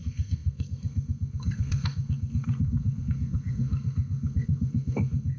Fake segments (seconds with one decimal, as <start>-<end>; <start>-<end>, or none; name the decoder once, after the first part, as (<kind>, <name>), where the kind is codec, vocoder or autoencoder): 0.0-5.4 (codec, SNAC)